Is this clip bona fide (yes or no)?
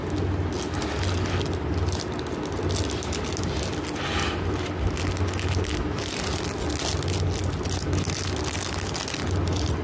yes